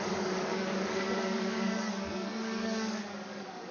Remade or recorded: remade